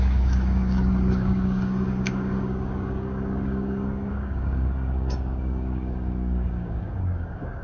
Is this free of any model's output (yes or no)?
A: no